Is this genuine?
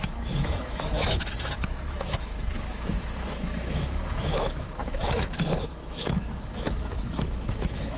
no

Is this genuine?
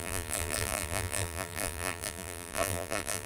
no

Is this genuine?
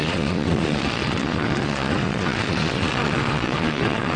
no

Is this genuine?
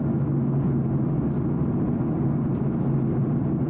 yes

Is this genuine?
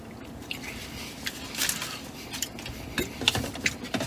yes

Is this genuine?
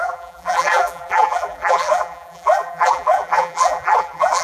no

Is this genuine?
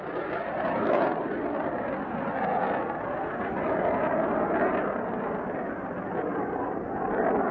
yes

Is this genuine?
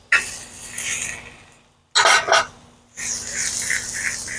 yes